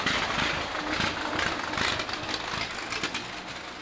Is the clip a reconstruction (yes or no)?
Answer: no